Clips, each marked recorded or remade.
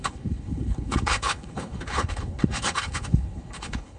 remade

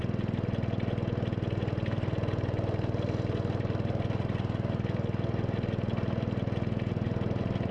recorded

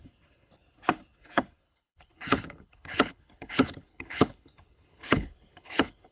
remade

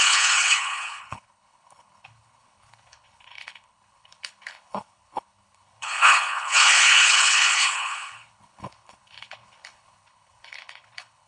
remade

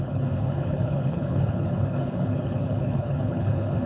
remade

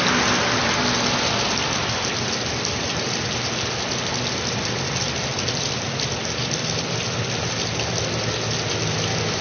recorded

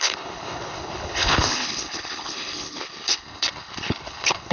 remade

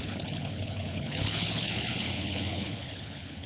remade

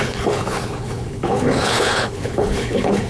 remade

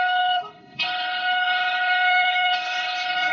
remade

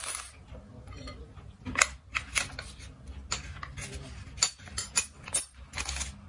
recorded